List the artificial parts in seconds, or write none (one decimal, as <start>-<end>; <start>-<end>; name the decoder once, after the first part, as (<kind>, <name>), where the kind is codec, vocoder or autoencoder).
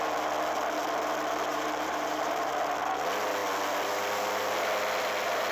1.5-2.5 (vocoder, BigVGAN v2)